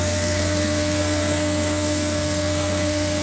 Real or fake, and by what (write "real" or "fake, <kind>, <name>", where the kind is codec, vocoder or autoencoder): fake, codec, SNAC